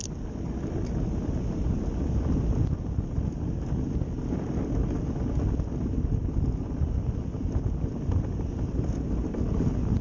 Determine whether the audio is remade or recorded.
recorded